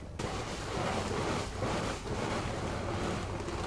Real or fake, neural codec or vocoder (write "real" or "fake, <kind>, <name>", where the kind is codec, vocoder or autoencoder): real